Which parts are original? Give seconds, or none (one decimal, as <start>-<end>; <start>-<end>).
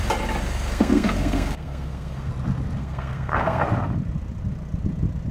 0.0-0.5; 2.3-2.8; 3.6-5.3